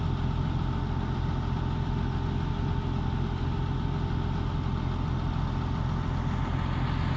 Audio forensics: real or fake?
real